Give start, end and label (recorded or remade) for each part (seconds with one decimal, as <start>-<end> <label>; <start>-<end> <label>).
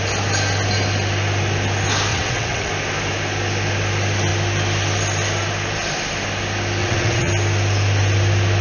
0.0-2.1 recorded; 2.1-2.7 remade; 2.7-6.8 recorded; 6.8-7.3 remade; 7.3-8.6 recorded